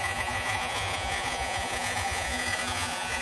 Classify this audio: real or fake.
fake